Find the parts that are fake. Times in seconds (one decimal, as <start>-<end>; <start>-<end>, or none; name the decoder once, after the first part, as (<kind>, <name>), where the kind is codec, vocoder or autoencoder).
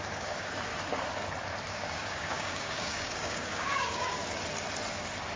0.0-0.7 (codec, DAC); 1.7-4.2